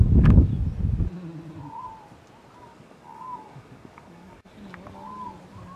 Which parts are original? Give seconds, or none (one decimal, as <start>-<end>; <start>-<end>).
0.5-2.6; 4.5-5.8